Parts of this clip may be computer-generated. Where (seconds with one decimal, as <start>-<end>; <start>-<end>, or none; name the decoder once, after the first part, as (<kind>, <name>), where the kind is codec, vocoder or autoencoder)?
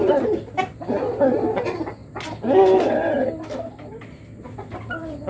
none